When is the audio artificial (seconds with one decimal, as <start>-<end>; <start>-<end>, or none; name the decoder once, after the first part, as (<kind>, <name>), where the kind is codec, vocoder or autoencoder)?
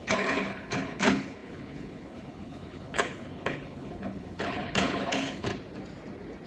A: 0.0-5.5 (codec, HILCodec)